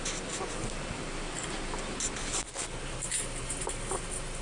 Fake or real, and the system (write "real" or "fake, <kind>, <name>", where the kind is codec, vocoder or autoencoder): real